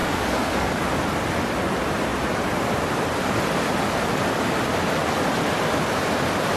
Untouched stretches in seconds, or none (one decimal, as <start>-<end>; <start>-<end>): 0.8-6.6